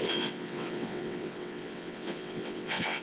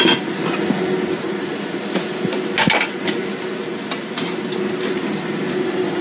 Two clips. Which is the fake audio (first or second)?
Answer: first